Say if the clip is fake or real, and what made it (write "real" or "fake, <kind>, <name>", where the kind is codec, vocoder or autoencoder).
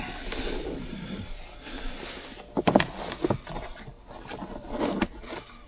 real